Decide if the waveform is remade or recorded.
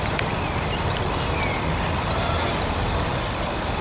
recorded